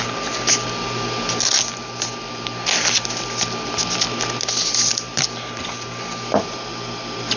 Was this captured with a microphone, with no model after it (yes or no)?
yes